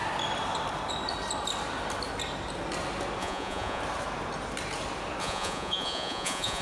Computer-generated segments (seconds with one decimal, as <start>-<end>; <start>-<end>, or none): 3.2-3.8; 5.2-6.6